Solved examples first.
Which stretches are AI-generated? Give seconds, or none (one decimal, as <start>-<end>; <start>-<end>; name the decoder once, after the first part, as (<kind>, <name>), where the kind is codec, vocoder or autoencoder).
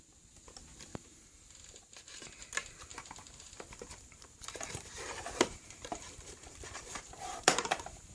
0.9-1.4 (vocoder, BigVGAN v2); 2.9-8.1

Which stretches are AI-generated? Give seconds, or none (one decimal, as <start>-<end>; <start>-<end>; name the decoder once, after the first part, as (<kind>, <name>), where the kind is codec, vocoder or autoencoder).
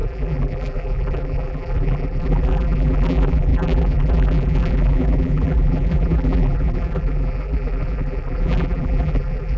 0.0-9.6 (vocoder, BigVGAN v2)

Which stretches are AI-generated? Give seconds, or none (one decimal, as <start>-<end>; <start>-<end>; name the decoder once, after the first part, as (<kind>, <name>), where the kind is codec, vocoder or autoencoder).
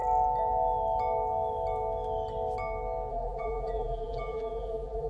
3.1-5.1 (vocoder, BigVGAN v2)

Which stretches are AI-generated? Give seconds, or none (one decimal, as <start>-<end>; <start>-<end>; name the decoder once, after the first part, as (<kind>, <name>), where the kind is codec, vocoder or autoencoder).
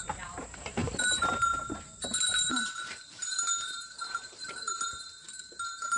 0.0-6.0 (vocoder, BigVGAN v2)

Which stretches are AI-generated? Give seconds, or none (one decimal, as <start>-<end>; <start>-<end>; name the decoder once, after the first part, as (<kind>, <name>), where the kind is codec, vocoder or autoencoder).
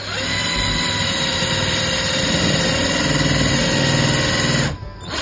0.4-3.5 (vocoder, BigVGAN v2)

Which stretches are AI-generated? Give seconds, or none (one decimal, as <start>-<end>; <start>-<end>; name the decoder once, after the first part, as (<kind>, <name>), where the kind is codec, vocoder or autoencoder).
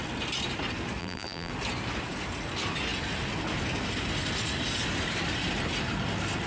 1.0-1.5 (vocoder, BigVGAN v2)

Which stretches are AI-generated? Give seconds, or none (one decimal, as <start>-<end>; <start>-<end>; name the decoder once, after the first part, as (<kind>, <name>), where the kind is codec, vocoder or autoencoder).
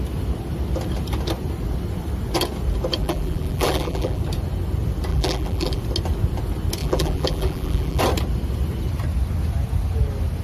3.0-4.2 (vocoder, BigVGAN v2); 5.1-5.8; 6.8-8.0